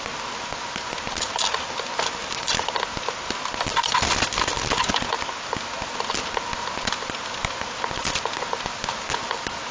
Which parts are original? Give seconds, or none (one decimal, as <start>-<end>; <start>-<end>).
0.0-9.7